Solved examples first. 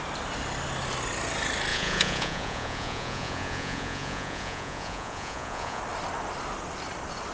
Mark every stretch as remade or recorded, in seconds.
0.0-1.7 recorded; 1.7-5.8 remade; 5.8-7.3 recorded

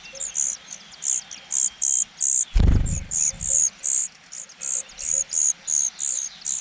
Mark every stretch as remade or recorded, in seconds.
0.0-6.6 recorded

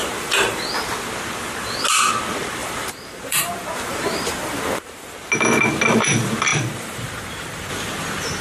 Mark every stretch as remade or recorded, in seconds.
0.0-0.6 remade; 0.6-2.6 recorded; 2.6-5.1 remade; 5.1-6.5 recorded; 6.5-7.7 remade; 7.7-8.4 recorded